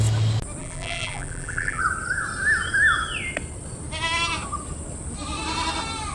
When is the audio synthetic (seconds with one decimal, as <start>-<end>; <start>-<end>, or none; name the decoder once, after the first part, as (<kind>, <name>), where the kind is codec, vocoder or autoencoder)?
0.6-1.8 (vocoder, BigVGAN v2)